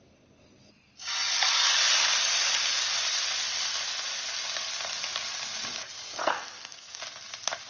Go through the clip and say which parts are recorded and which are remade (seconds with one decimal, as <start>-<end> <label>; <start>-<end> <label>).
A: 0.0-6.2 recorded; 6.2-7.0 remade; 7.0-7.7 recorded